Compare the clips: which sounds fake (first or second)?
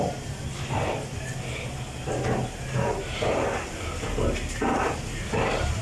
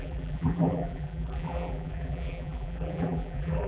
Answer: second